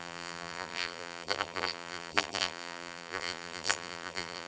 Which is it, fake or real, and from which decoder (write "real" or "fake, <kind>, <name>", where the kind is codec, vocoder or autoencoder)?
fake, vocoder, BigVGAN v2